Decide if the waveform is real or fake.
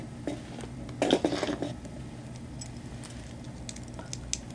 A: real